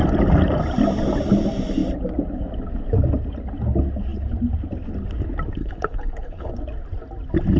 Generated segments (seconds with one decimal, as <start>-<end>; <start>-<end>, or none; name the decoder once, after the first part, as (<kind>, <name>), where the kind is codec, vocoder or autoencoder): 5.6-6.5 (codec, HILCodec)